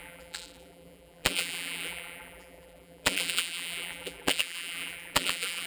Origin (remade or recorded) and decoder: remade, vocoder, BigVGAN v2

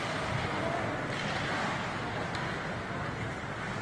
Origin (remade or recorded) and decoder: recorded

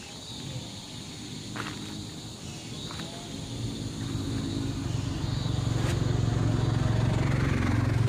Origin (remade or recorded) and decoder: recorded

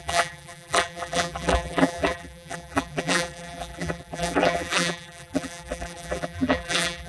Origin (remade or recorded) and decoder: remade, vocoder, BigVGAN v2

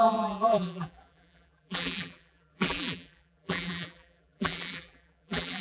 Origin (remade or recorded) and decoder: remade, vocoder, BigVGAN v2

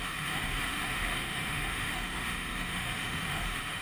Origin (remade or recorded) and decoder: remade, autoencoder, DAC-VAE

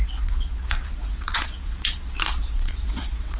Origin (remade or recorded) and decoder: remade, vocoder, WaveNeXt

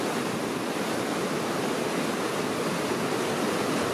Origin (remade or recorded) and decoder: recorded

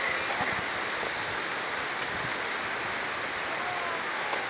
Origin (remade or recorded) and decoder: recorded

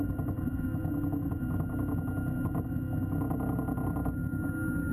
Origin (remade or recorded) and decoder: recorded